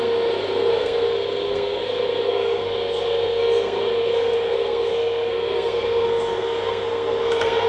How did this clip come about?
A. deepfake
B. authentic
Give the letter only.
A